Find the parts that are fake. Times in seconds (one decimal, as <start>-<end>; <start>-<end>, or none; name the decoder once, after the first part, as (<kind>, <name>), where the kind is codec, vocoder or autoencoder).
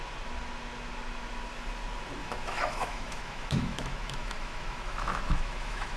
2.2-6.0 (autoencoder, DAC-VAE)